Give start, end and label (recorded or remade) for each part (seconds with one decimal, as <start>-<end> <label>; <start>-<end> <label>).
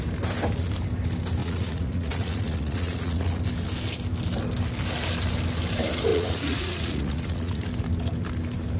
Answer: 0.0-1.4 recorded; 1.4-3.4 remade; 3.4-6.1 recorded; 6.1-7.6 remade; 7.6-8.8 recorded